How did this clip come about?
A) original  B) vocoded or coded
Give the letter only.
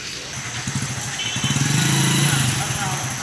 A